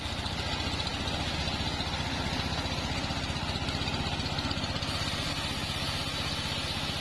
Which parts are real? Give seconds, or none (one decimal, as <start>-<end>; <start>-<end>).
0.0-7.0